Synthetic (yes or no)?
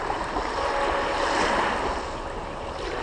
no